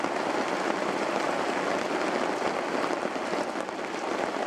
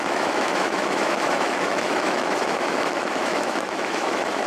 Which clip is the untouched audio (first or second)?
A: first